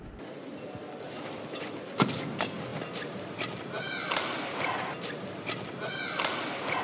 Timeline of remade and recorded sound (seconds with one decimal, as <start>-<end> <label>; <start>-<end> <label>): 0.0-6.8 recorded